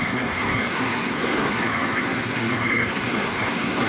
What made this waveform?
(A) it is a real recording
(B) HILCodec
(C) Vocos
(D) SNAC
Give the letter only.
D